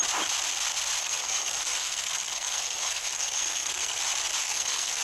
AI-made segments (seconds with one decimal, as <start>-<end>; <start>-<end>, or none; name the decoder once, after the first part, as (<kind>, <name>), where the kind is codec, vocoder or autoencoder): 1.0-4.0 (codec, SNAC); 4.4-5.0